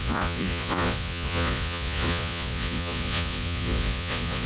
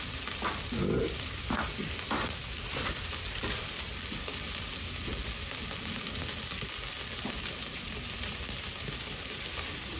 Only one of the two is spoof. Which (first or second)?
first